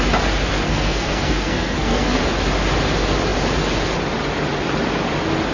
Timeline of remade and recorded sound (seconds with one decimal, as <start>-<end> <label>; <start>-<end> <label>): 0.0-0.5 recorded; 0.5-2.2 remade; 2.2-5.5 recorded